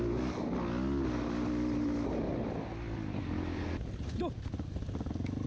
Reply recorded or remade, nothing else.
recorded